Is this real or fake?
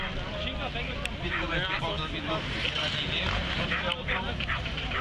real